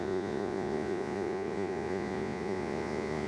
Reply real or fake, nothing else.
fake